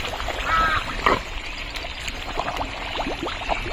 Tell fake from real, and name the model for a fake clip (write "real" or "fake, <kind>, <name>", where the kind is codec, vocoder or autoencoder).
real